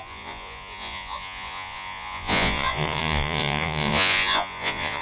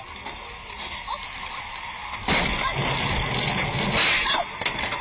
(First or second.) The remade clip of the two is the first